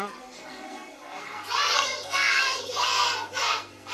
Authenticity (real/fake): fake